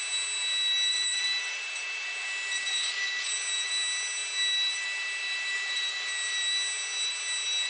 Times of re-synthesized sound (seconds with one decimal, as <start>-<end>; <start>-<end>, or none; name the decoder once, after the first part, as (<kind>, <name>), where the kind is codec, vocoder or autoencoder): 0.9-1.6 (vocoder, BigVGAN v2)